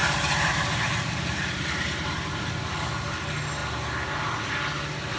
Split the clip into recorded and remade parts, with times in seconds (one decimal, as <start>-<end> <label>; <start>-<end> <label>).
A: 0.0-2.1 remade; 2.1-5.2 recorded